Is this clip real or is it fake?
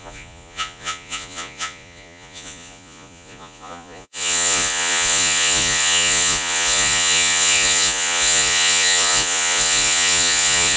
fake